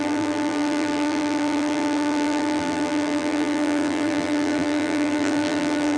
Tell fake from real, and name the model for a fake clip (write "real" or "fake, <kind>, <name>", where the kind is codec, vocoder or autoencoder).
fake, vocoder, BigVGAN v2